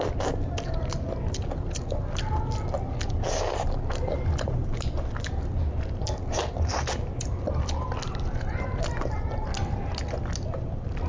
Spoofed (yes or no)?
no